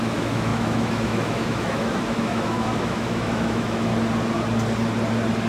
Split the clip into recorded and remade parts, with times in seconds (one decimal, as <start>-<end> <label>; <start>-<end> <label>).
0.0-3.9 remade; 3.9-5.5 recorded